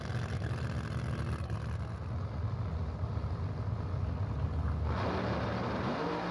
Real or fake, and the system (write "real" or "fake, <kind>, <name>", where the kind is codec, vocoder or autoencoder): real